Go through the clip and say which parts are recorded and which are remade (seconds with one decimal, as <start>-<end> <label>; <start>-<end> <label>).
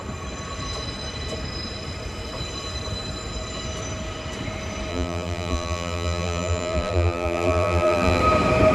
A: 0.0-4.9 recorded; 4.9-8.2 remade; 8.2-8.7 recorded